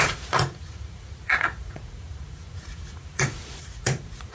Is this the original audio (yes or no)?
no